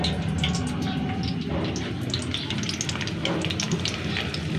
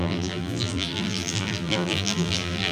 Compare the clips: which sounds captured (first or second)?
first